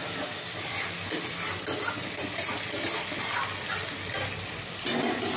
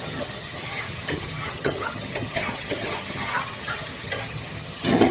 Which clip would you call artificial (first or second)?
second